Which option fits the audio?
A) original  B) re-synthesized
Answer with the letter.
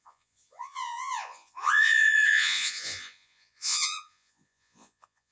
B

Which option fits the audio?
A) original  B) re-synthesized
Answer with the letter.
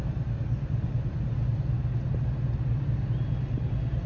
A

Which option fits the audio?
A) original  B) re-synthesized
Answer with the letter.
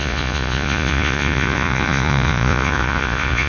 B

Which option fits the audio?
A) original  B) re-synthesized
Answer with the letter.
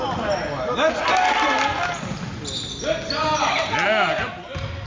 A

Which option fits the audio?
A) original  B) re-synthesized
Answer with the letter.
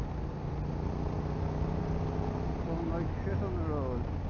A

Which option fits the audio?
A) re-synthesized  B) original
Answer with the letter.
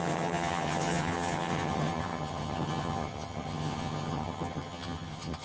A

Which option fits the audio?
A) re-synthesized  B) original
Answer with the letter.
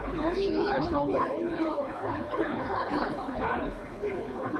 A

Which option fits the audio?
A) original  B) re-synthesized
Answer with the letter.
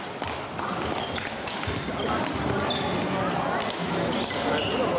A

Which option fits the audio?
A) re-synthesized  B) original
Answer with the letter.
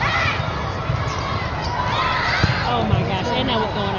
B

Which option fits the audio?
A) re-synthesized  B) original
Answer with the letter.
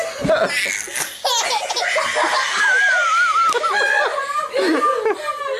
B